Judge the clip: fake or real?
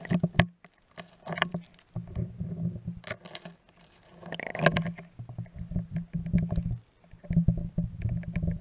real